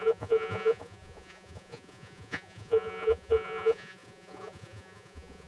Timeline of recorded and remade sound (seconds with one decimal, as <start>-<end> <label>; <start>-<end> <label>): 0.0-5.5 remade